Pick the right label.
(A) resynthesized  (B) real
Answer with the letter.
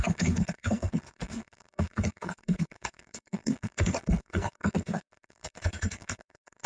A